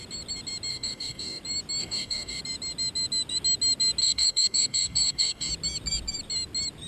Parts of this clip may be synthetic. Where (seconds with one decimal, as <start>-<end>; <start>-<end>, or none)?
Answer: 0.7-1.4; 1.8-2.4; 4.0-5.5